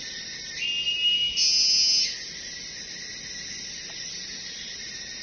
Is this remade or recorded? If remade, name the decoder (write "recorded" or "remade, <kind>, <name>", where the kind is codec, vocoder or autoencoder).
recorded